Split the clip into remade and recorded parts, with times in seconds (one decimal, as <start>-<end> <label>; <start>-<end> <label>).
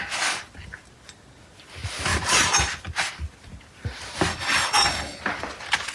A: 0.0-4.3 recorded; 4.3-5.2 remade; 5.2-5.9 recorded